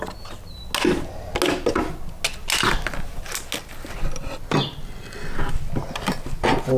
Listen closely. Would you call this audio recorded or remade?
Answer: recorded